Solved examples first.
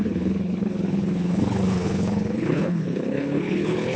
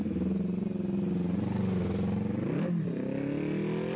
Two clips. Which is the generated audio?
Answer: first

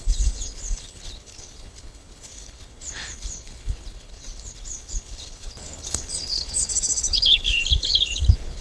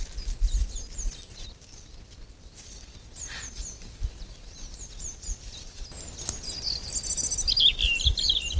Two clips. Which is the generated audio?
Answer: first